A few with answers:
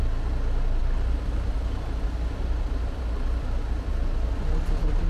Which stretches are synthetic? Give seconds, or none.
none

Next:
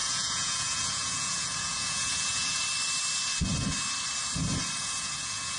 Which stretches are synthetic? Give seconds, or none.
0.0-2.6 (vocoder, Vocos); 4.8-5.6

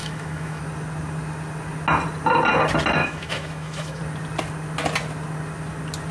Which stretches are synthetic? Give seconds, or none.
0.0-0.6 (autoencoder, DAC-VAE); 3.0-4.0

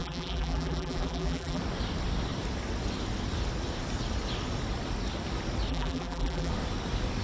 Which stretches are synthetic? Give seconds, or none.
0.0-1.6 (vocoder, BigVGAN v2); 5.7-6.5

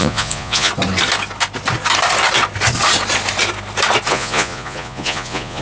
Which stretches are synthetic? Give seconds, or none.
0.0-0.7 (vocoder, Vocos); 4.1-5.6